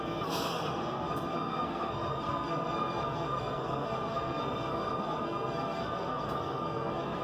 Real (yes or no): no